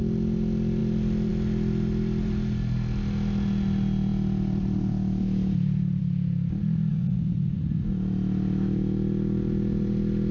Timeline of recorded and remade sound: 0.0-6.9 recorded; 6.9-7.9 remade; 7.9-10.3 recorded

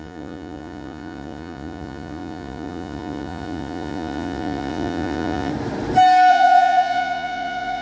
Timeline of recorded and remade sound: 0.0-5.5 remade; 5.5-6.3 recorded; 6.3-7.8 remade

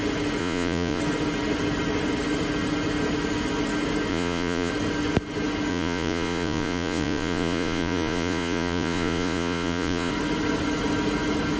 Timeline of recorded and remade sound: 0.0-0.4 recorded; 0.4-1.0 remade; 1.0-4.1 recorded; 4.1-4.7 remade; 4.7-5.7 recorded; 5.7-10.1 remade; 10.1-11.6 recorded

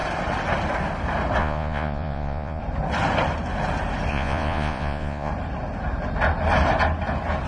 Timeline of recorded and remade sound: 0.0-1.4 recorded; 1.4-2.6 remade; 2.6-4.1 recorded; 4.1-5.3 remade; 5.3-7.5 recorded

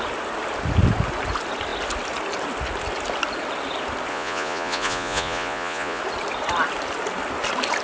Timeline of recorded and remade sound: 0.0-4.1 recorded; 4.1-6.0 remade; 6.0-7.8 recorded